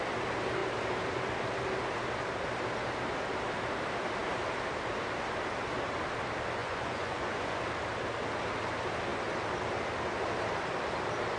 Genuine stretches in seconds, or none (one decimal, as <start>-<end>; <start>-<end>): 0.0-6.6; 7.6-11.4